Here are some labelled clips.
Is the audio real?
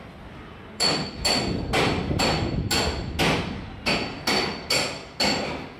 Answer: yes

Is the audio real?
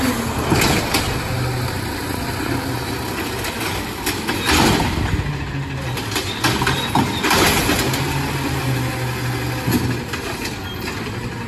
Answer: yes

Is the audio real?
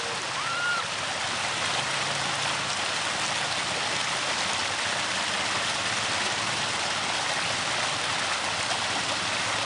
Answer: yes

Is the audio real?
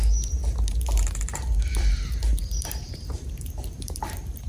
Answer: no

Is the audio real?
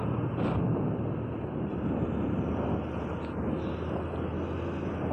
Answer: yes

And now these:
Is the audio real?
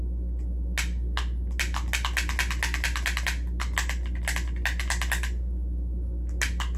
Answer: yes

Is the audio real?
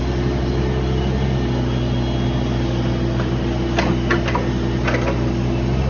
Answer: yes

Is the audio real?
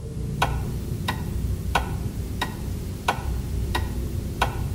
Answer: no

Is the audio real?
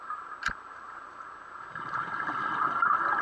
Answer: yes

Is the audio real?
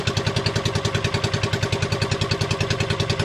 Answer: yes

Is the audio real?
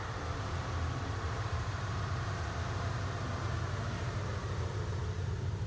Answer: no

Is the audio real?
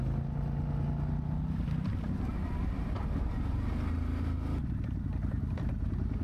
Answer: yes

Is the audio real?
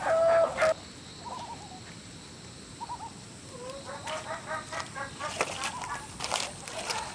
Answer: yes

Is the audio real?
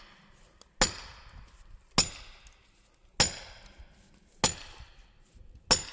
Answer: yes